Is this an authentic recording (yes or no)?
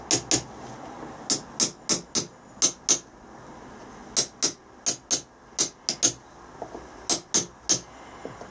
yes